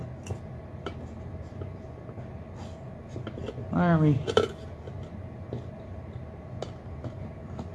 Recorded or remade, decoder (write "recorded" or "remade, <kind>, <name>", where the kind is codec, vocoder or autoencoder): recorded